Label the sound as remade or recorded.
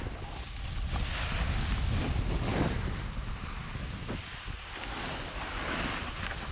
recorded